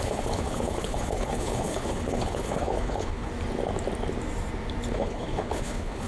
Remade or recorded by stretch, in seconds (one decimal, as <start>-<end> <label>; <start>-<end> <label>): 0.0-3.3 remade; 3.3-4.9 recorded; 4.9-6.1 remade